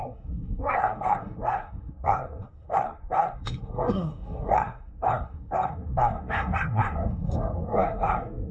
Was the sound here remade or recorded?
remade